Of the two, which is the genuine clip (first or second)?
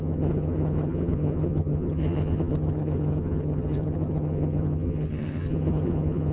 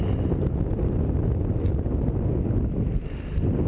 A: second